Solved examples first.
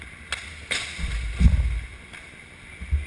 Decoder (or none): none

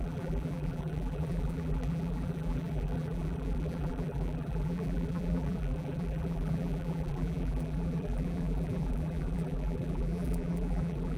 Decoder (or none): vocoder, BigVGAN v2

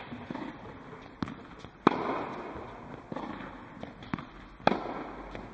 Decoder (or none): none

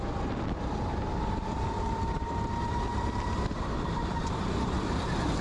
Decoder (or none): vocoder, BigVGAN v2